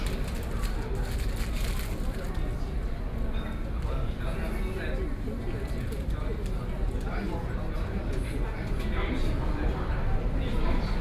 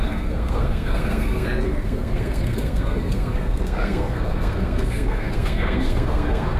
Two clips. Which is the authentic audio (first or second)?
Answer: first